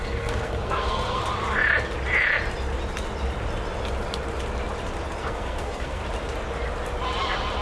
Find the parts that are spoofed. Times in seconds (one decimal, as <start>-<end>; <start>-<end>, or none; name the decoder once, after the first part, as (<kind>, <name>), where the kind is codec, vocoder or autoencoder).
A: 0.0-1.2 (codec, SNAC); 5.2-6.0